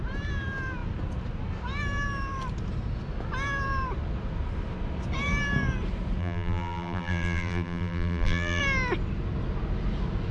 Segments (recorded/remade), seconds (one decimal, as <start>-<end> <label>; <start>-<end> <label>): 0.0-6.2 recorded; 6.2-8.6 remade; 8.6-10.3 recorded